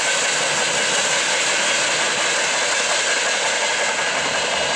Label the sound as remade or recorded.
recorded